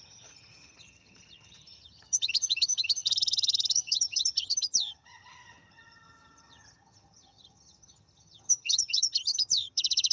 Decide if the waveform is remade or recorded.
remade